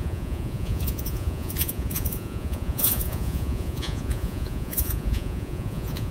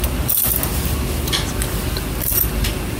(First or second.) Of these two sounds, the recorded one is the second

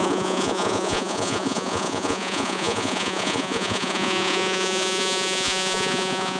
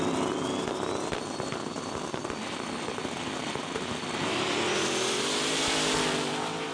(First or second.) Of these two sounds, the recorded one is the second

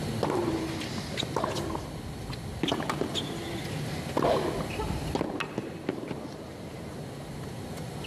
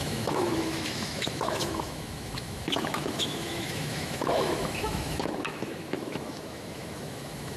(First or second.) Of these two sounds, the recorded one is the first